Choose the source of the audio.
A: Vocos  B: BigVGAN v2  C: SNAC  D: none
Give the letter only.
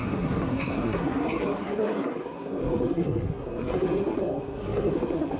C